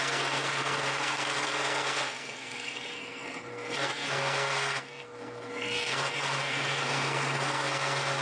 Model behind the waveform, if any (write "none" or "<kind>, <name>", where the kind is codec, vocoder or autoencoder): codec, SNAC